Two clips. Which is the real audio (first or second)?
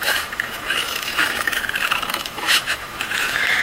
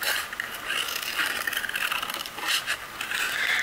second